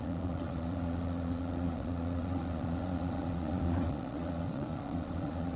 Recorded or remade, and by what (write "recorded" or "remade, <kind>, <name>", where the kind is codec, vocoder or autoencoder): remade, vocoder, Vocos